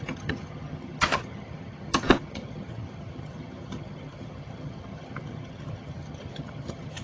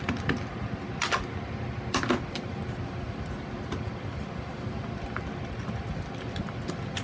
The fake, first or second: first